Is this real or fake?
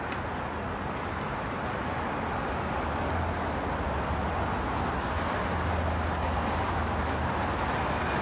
real